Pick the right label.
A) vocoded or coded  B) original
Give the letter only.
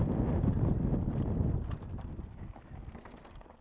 B